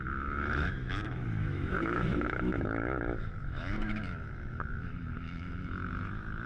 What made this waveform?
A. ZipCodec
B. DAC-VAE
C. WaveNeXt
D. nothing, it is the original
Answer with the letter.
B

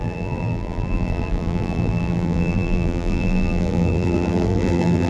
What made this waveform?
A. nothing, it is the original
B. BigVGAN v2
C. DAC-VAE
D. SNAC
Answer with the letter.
B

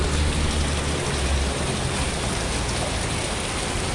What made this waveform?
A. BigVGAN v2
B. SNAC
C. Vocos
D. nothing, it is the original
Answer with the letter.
D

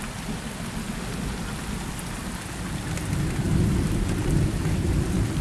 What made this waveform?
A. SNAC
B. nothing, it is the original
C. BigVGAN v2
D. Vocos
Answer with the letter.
B